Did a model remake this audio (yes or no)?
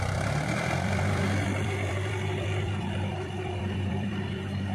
yes